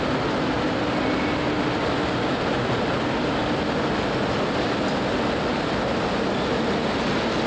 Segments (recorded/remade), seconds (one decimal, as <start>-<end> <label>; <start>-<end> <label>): 0.0-7.5 recorded